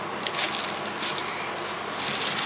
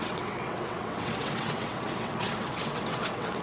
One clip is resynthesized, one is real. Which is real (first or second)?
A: first